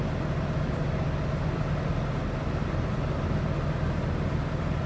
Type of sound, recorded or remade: recorded